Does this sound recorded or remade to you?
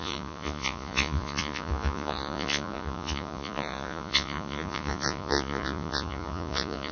remade